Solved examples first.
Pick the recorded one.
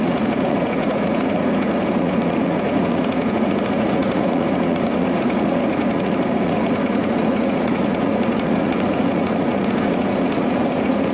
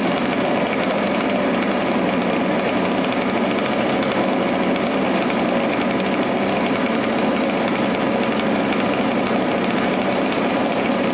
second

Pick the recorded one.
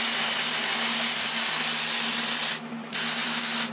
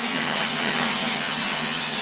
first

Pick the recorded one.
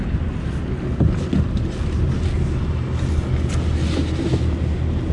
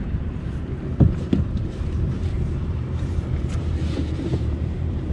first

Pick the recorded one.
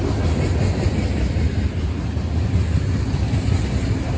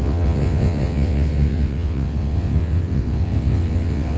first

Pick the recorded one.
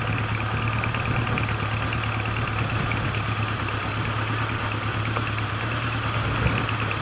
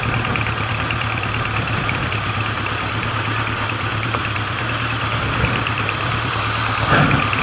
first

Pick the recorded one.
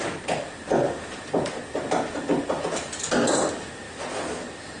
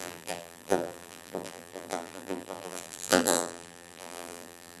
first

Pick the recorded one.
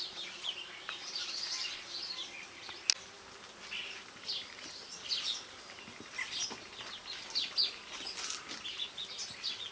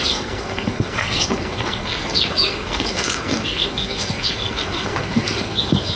first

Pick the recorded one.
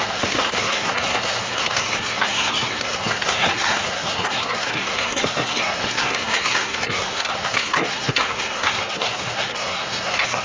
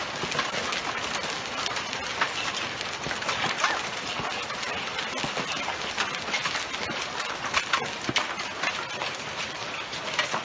second